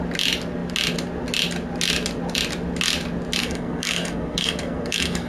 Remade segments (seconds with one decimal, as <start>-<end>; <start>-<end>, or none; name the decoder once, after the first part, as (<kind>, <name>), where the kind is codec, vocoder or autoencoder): 3.4-5.3 (codec, SNAC)